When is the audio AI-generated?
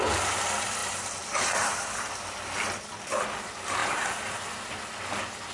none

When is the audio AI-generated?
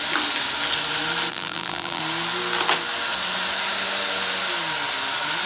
1.3-2.0 (vocoder, BigVGAN v2)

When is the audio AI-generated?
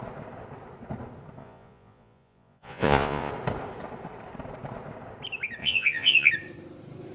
1.4-3.3 (vocoder, Vocos); 5.6-6.3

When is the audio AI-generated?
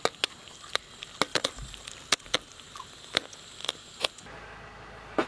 1.3-2.3 (vocoder, BigVGAN v2)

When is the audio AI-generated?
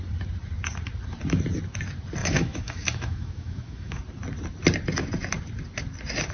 2.2-4.0 (autoencoder, DAC-VAE)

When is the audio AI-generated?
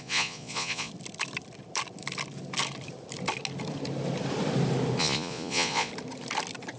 0.0-0.9 (vocoder, Vocos); 5.0-5.9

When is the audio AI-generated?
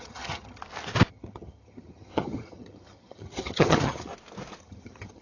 0.0-0.6 (vocoder, HiFi-GAN); 1.1-4.1; 4.6-5.2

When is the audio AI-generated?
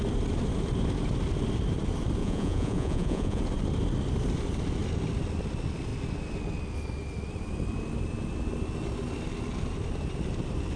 2.2-3.4 (vocoder, Vocos)